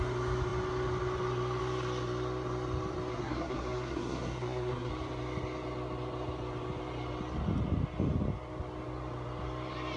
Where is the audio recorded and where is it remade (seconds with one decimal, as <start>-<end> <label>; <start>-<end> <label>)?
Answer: 0.0-3.1 recorded; 3.1-4.9 remade; 4.9-10.0 recorded